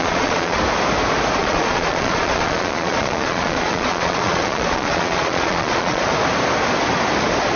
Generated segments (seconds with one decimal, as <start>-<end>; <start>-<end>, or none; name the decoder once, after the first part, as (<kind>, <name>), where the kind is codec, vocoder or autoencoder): 0.0-0.6 (vocoder, Vocos); 1.4-6.0